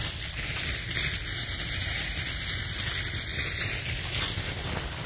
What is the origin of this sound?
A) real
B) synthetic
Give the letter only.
A